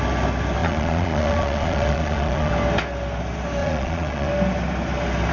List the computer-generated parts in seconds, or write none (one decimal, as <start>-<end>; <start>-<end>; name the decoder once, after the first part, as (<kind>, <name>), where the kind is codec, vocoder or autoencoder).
0.6-2.5 (vocoder, Vocos); 3.6-4.3